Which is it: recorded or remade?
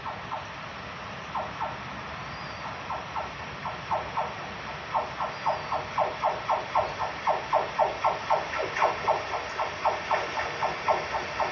recorded